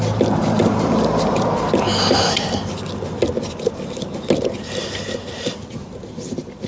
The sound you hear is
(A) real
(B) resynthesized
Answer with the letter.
A